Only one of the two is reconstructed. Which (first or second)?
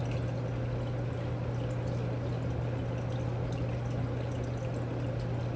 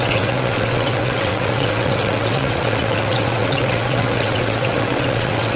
second